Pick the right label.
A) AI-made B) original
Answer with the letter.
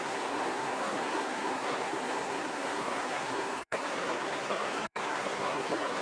A